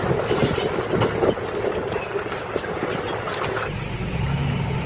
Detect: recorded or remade recorded